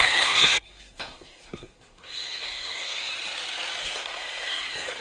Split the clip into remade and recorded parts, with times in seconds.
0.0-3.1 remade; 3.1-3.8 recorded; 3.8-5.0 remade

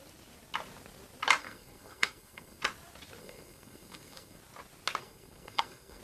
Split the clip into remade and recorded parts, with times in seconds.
0.0-1.4 recorded; 1.4-2.6 remade; 2.6-3.2 recorded; 3.2-4.4 remade; 4.4-5.0 recorded; 5.0-6.0 remade

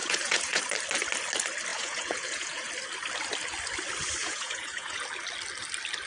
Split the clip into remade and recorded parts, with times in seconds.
0.0-0.6 remade; 0.6-1.7 recorded; 1.7-2.7 remade; 2.7-4.2 recorded; 4.2-5.0 remade; 5.0-6.1 recorded

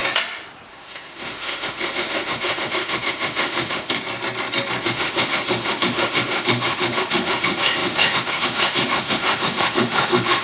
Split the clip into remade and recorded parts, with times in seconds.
0.0-0.7 recorded; 0.7-4.0 remade; 4.0-4.8 recorded; 4.8-10.4 remade

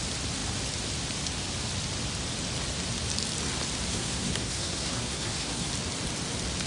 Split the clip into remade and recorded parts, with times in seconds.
0.0-3.9 recorded; 3.9-5.7 remade; 5.7-6.7 recorded